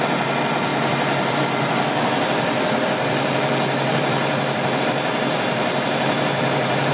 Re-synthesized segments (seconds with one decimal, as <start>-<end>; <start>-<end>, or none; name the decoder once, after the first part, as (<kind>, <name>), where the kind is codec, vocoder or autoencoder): 0.0-6.9 (vocoder, BigVGAN v2)

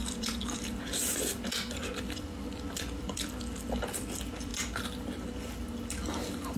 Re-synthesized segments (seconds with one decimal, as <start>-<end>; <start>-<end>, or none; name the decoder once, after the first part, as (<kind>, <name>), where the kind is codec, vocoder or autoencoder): 0.0-4.5 (vocoder, BigVGAN v2)